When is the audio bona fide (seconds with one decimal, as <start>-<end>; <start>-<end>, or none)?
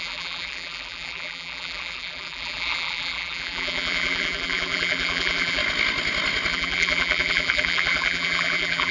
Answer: 5.6-6.5